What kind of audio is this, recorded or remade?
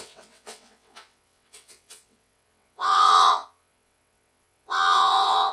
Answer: remade